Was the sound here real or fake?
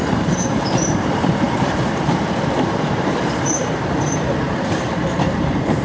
fake